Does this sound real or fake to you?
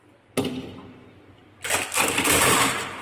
real